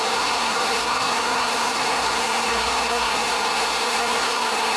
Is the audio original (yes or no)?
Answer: no